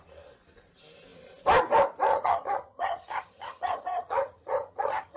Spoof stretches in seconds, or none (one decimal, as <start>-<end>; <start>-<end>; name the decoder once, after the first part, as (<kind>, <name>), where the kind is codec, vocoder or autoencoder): 2.1-5.2 (vocoder, HiFi-GAN)